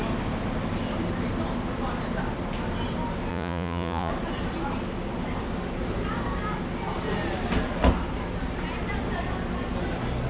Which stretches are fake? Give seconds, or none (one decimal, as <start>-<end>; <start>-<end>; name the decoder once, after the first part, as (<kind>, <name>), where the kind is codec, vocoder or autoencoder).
3.3-4.1 (vocoder, Vocos)